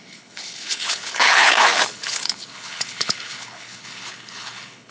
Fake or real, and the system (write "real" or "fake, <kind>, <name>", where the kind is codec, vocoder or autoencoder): fake, codec, HILCodec